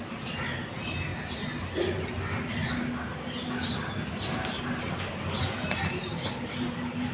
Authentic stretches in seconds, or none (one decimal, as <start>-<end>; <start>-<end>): 0.0-7.1

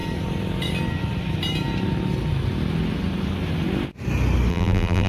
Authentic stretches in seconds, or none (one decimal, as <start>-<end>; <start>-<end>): 0.0-4.5

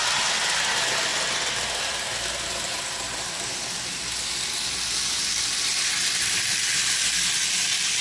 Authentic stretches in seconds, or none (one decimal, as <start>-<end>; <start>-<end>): 0.0-8.0

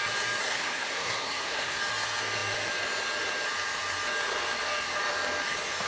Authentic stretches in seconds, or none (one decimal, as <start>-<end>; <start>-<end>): 0.0-0.4; 1.8-5.9

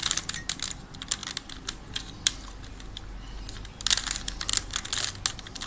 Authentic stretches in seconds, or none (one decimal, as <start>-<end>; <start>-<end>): 0.0-5.7

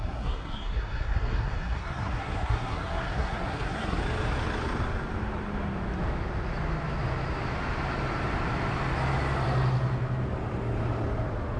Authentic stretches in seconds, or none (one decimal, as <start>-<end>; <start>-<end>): 4.0-11.6

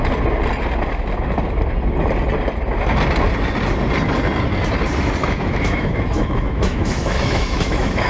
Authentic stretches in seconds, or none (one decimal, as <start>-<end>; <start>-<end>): 0.0-5.2

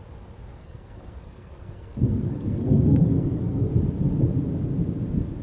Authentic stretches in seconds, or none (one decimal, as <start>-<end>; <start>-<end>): 0.0-0.5; 3.7-5.4